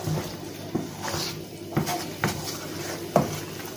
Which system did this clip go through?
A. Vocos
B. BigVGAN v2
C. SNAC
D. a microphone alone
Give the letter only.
D